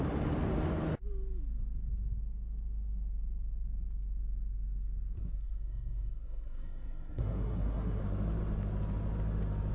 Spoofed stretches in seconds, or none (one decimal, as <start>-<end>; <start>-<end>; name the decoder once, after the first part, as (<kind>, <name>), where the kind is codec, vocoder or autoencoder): 5.2-8.0 (codec, SNAC)